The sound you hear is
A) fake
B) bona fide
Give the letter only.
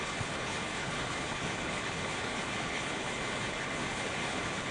A